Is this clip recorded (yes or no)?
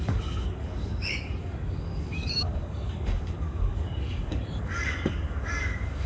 no